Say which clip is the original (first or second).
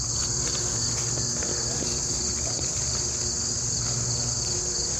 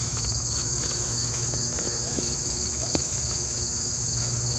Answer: first